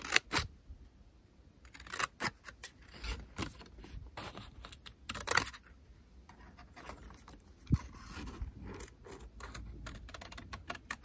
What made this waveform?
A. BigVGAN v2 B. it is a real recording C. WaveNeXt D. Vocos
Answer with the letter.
B